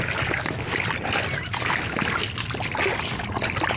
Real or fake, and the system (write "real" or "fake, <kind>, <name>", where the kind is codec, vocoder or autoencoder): real